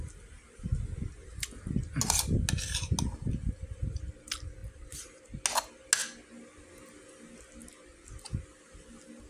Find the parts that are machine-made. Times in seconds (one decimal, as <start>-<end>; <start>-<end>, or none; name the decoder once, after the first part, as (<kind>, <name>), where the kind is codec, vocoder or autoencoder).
4.6-5.2 (vocoder, BigVGAN v2)

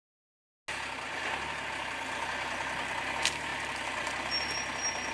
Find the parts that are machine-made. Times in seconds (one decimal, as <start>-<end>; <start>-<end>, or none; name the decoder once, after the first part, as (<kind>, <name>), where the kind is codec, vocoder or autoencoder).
none

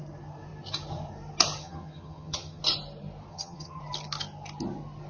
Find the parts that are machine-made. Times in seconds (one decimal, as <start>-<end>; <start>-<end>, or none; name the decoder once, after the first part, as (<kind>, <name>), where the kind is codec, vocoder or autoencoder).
1.6-2.6 (vocoder, HiFi-GAN); 3.3-3.8

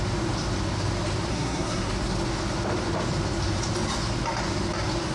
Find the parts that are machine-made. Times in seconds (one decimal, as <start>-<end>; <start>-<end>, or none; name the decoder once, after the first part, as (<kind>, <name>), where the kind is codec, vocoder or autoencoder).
1.3-1.9 (codec, SNAC)

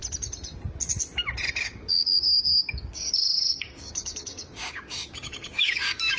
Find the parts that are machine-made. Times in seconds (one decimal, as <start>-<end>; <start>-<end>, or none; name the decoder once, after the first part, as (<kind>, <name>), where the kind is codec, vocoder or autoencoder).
1.6-6.2 (codec, DAC)

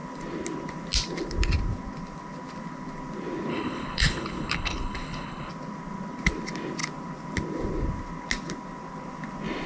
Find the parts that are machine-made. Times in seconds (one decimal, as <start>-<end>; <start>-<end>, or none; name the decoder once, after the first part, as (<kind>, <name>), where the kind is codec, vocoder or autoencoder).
3.5-5.5 (codec, HILCodec)